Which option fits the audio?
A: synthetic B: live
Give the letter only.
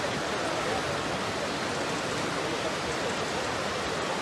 B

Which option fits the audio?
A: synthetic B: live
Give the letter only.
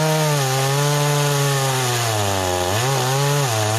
B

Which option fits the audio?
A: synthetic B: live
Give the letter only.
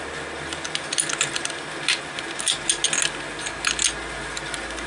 B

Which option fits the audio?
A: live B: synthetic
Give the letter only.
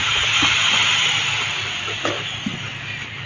A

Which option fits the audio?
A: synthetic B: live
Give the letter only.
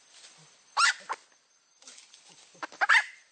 B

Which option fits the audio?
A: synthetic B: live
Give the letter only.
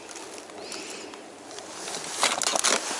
B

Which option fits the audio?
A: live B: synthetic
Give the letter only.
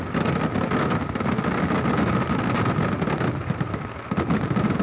A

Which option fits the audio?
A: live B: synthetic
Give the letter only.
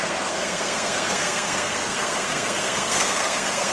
B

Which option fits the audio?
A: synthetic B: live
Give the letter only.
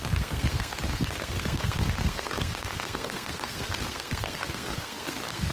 A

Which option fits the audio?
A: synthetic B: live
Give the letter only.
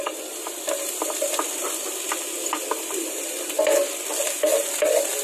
B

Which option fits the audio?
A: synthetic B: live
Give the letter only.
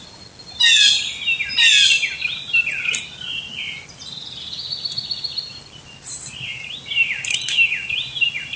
B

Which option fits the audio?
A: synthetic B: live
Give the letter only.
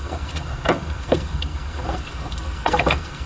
A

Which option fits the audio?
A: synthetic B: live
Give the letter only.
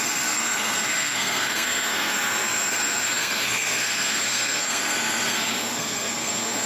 A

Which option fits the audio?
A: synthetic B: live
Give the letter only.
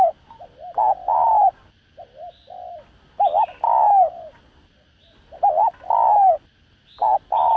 B